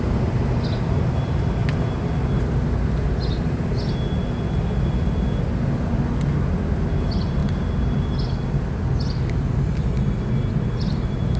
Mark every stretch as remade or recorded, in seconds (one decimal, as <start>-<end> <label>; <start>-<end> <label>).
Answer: 0.0-1.6 remade; 1.6-6.9 recorded; 6.9-7.4 remade; 7.4-11.0 recorded; 11.0-11.4 remade